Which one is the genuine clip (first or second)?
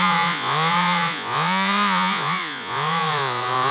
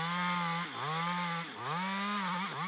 second